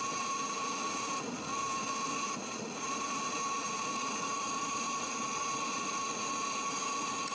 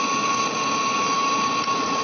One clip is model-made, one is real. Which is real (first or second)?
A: second